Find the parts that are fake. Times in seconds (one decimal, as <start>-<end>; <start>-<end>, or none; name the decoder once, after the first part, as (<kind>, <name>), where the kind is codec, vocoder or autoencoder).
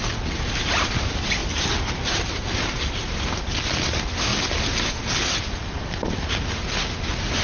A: 1.4-3.3 (vocoder, BigVGAN v2)